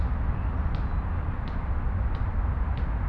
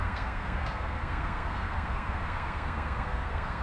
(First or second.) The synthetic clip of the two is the second